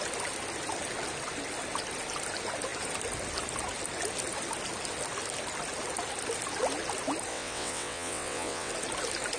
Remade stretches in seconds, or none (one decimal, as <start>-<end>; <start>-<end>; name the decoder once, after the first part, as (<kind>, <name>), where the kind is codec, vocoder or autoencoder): 7.3-8.7 (vocoder, WaveNeXt)

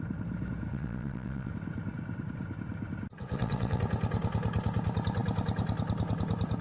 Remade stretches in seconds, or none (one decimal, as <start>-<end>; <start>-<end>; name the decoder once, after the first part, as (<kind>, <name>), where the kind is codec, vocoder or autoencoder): 0.7-1.5 (vocoder, WaveNeXt); 3.2-3.8

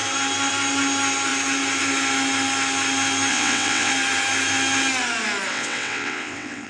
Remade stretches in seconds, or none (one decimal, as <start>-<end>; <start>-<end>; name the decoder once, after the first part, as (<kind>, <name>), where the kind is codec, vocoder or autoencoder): 3.3-3.9 (vocoder, WaveNeXt); 5.5-6.7

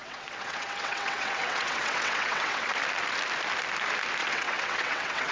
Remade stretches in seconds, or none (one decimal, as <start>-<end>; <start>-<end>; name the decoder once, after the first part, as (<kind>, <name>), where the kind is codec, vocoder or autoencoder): 0.0-2.7 (vocoder, WaveNeXt); 4.2-5.3